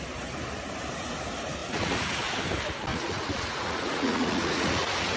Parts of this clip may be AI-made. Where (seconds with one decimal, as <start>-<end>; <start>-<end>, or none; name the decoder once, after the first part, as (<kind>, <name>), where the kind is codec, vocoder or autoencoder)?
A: 1.6-2.3 (vocoder, Vocos); 2.9-5.2